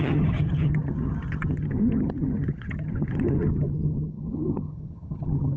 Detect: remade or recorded remade